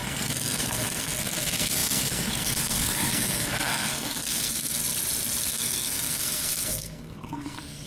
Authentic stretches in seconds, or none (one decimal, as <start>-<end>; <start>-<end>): 4.8-5.4